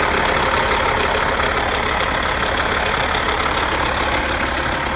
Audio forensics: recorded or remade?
recorded